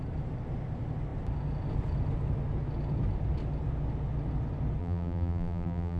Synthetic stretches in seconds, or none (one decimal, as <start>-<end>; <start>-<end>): 4.8-6.0